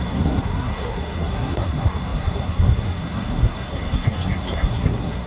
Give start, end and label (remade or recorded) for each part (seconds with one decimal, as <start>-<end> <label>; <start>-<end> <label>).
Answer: 0.0-5.3 remade